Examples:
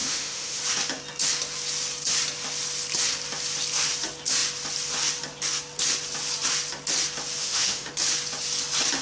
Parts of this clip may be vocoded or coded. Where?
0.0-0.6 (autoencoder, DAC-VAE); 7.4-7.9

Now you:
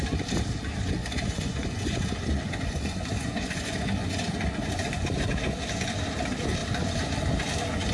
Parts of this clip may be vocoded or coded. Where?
1.0-5.7 (vocoder, Vocos)

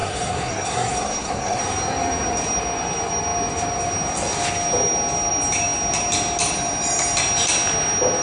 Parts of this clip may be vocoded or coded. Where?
0.0-1.6 (codec, SNAC)